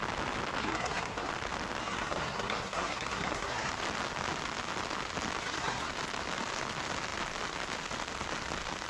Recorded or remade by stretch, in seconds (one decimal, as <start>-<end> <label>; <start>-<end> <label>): 0.0-0.6 recorded; 0.6-1.3 remade; 1.3-1.8 recorded; 1.8-3.7 remade; 3.7-5.4 recorded; 5.4-5.9 remade; 5.9-8.9 recorded